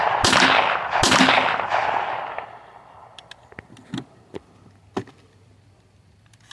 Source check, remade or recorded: recorded